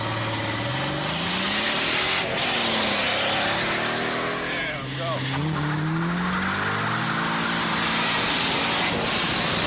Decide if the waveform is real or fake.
real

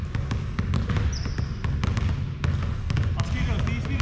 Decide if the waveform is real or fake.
real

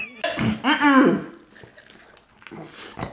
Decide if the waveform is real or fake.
real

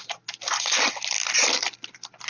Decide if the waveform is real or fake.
real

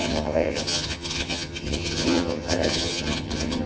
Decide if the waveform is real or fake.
fake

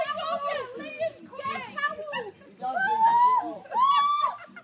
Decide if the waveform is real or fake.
real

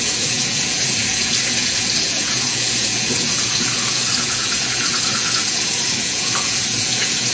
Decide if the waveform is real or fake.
fake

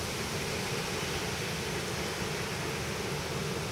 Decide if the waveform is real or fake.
real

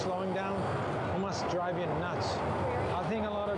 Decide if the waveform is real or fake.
real